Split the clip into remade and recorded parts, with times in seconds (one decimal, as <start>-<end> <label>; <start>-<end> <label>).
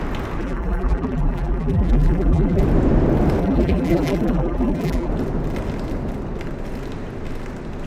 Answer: 0.0-0.4 recorded; 0.4-2.6 remade; 2.6-3.4 recorded; 3.4-5.1 remade; 5.1-7.9 recorded